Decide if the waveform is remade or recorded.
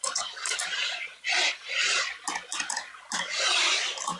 recorded